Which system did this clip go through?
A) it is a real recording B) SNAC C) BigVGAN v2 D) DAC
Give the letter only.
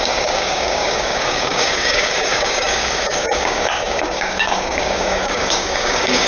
D